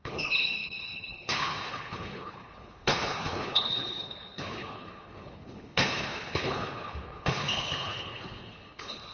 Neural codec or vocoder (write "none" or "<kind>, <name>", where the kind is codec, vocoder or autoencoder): codec, HILCodec